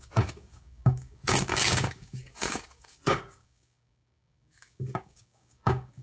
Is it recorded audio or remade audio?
remade